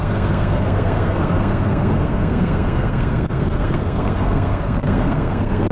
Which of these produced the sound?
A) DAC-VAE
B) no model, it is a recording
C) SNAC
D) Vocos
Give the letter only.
C